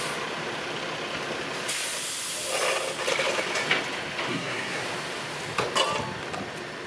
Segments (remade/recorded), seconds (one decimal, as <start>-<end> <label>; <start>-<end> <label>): 0.0-4.3 recorded; 4.3-4.8 remade; 4.8-6.9 recorded